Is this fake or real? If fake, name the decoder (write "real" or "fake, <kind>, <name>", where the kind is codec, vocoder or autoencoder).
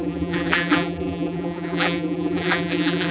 fake, vocoder, BigVGAN v2